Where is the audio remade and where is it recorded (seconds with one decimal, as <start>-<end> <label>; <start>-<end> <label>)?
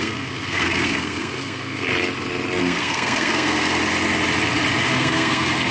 0.0-1.9 remade; 1.9-2.6 recorded; 2.6-3.8 remade; 3.8-4.9 recorded; 4.9-5.7 remade